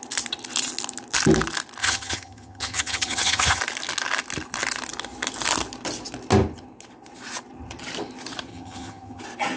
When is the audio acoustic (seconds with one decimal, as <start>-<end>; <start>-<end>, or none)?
0.0-1.8; 3.6-8.5; 9.2-9.6